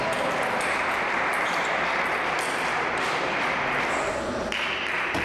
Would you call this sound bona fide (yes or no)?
no